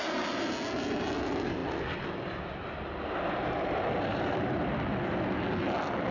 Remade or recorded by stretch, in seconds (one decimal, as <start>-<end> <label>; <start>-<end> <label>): 0.0-4.1 recorded; 4.1-4.6 remade; 4.6-6.1 recorded